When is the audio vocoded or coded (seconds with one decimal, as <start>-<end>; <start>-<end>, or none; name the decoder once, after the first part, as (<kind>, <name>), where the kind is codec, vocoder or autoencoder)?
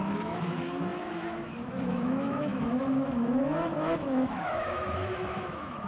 0.0-5.9 (autoencoder, DAC-VAE)